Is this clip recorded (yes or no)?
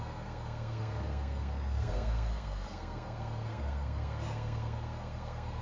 no